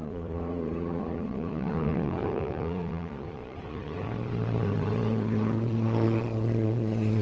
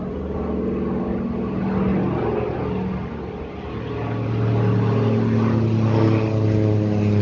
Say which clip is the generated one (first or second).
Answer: first